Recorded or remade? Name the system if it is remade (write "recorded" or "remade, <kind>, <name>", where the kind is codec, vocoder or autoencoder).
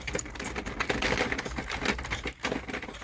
recorded